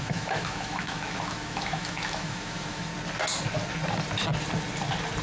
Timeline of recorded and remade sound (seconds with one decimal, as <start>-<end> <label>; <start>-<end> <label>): 0.0-2.9 remade; 2.9-5.2 recorded